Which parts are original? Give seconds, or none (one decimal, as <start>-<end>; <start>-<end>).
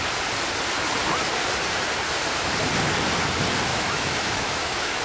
0.0-3.7